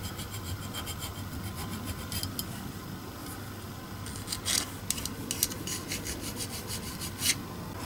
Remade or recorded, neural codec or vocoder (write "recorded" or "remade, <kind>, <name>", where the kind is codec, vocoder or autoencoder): recorded